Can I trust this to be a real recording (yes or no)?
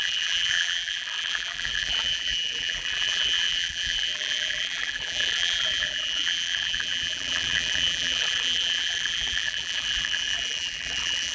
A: no